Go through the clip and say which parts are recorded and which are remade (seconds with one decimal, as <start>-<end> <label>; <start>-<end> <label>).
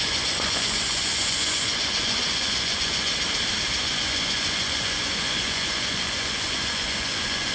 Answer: 0.0-3.1 remade; 3.1-3.8 recorded; 3.8-7.5 remade